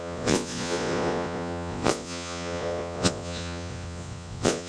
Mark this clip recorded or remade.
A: remade